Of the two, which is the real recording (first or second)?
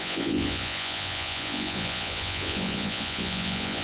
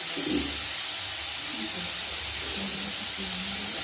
second